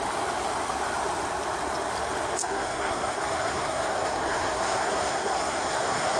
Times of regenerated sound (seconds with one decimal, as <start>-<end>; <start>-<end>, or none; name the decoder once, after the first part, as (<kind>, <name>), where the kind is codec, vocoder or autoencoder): 2.4-6.2 (codec, SNAC)